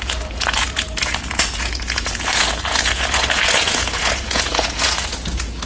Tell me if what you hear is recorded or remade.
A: remade